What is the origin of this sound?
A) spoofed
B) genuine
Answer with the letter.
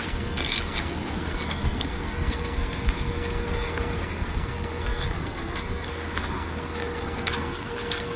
A